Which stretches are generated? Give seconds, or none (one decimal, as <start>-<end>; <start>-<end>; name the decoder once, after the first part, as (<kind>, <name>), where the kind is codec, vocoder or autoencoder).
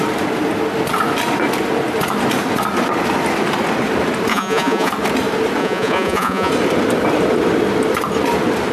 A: 4.3-4.9 (vocoder, Vocos); 5.6-6.5